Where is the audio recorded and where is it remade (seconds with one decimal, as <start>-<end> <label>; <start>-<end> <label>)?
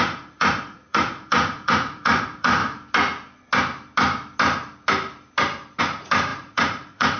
0.0-2.6 remade; 2.6-5.8 recorded; 5.8-7.2 remade